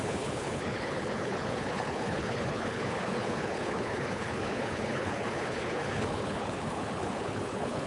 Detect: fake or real fake